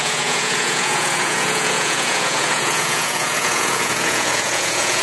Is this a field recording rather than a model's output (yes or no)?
no